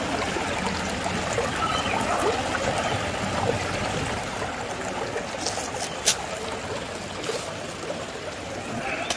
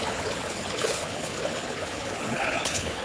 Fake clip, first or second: second